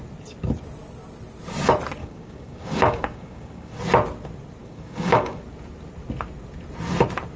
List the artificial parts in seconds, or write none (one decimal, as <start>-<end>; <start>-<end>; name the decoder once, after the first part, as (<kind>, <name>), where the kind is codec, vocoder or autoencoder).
2.0-3.8 (codec, DAC); 4.6-5.4